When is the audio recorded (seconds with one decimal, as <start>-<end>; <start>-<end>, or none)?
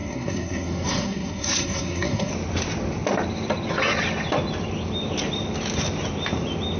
2.3-6.8